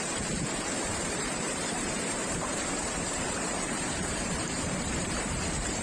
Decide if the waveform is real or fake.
fake